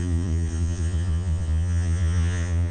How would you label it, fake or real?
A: fake